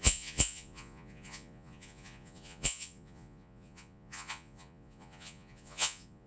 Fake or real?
fake